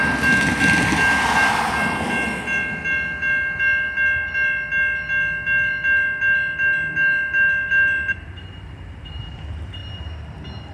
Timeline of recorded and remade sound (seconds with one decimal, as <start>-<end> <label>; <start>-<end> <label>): 0.0-10.7 recorded